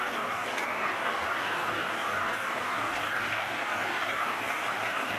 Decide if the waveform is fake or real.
fake